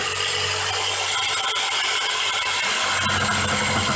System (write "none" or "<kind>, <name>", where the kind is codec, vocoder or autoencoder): none